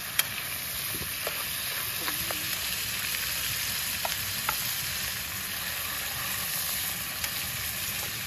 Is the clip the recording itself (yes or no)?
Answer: yes